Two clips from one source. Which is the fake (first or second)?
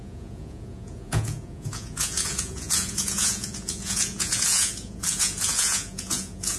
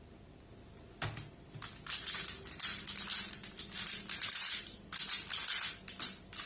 first